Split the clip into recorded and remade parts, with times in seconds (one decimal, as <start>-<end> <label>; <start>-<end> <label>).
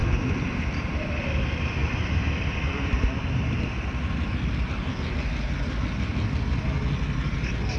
0.0-1.0 remade; 1.0-1.8 recorded; 1.8-4.3 remade; 4.3-7.8 recorded